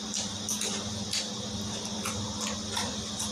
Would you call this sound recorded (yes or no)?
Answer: yes